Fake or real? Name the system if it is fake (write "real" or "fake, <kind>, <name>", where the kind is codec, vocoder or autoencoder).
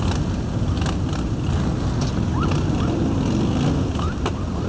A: real